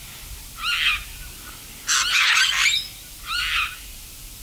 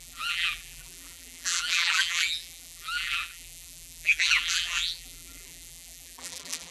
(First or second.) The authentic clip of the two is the first